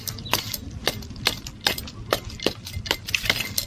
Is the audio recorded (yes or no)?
yes